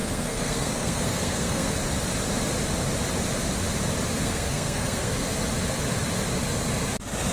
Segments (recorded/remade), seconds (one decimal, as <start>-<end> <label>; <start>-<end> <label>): 0.0-1.7 remade; 1.7-4.2 recorded; 4.2-5.1 remade; 5.1-7.3 recorded